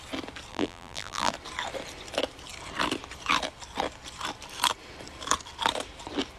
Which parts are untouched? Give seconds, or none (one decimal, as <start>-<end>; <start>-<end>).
0.0-0.5; 1.3-6.4